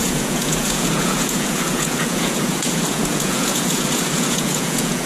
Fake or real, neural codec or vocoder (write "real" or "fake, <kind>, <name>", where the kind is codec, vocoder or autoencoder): fake, vocoder, Vocos